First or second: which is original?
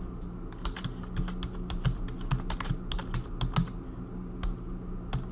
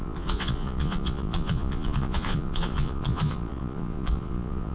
first